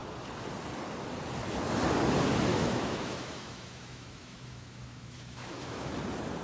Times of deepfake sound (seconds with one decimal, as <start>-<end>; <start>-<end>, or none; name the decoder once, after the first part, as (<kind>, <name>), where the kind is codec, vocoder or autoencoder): 2.5-5.9 (autoencoder, DAC-VAE)

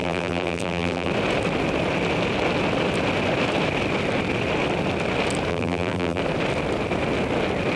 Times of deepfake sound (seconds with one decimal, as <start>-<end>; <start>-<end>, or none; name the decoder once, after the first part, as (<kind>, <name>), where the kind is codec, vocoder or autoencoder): 0.0-1.1 (vocoder, BigVGAN v2); 5.5-6.2

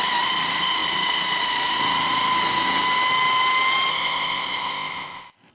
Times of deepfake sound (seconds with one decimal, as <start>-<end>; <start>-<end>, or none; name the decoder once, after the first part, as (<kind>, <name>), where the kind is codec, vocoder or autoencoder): 3.9-5.5 (codec, ZipCodec)

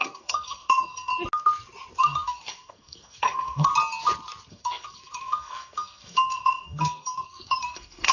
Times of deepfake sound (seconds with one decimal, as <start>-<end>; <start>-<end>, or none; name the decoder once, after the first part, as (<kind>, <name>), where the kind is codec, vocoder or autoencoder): 0.0-1.1 (codec, SNAC); 2.0-3.7; 4.5-8.1

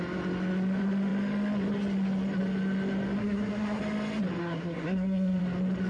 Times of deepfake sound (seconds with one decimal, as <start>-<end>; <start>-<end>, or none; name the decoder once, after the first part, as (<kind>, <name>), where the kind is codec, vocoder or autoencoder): 3.2-3.8 (codec, SNAC); 4.4-5.4

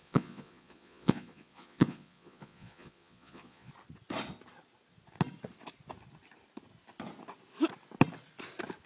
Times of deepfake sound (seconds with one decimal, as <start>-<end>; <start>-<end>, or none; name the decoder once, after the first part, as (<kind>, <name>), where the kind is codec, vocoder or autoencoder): 0.0-3.7 (vocoder, Vocos)

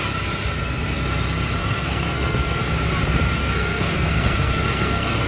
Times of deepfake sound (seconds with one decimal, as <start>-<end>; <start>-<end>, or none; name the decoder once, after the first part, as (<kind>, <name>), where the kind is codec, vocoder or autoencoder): 1.6-2.6 (codec, SNAC); 3.4-5.3

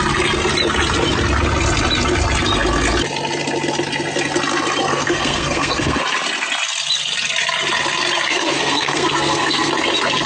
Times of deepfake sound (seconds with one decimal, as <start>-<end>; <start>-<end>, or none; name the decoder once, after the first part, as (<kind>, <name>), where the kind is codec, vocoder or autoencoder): 4.9-6.0 (codec, SNAC); 8.3-9.7